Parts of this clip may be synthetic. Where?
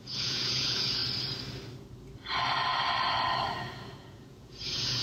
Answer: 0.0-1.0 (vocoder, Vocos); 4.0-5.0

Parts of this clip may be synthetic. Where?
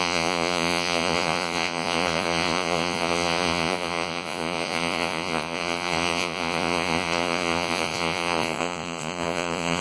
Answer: 0.0-9.8 (vocoder, Vocos)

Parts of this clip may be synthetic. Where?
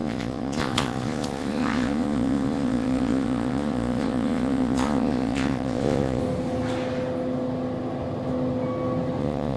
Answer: 0.0-6.2 (vocoder, Vocos); 9.2-9.6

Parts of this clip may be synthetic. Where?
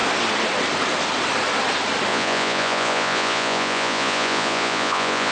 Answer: 2.1-5.3 (vocoder, Vocos)